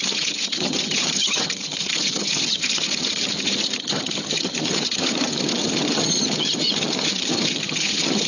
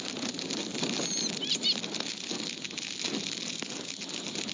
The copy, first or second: first